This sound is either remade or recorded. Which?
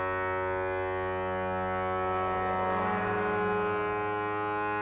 recorded